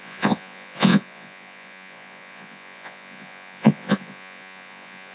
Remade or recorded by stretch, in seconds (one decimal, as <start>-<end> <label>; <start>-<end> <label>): 0.0-5.1 remade